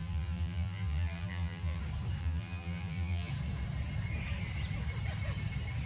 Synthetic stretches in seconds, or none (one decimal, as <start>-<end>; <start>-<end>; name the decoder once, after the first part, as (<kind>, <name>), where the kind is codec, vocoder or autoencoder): 0.0-1.8 (vocoder, BigVGAN v2); 2.2-3.3